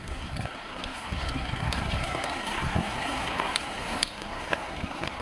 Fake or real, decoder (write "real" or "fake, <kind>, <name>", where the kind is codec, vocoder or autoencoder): fake, codec, SNAC